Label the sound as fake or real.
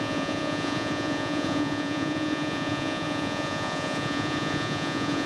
fake